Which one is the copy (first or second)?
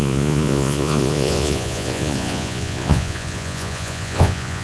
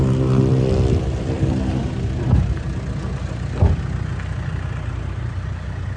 first